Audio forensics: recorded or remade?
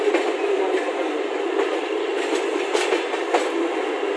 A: recorded